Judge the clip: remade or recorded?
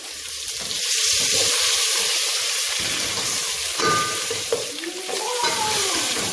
remade